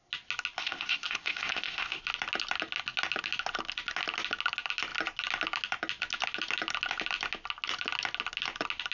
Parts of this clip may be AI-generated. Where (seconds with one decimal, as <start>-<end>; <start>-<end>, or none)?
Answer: 0.6-2.0